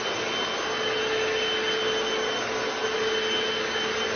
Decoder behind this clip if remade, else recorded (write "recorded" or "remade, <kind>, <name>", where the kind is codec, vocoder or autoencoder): recorded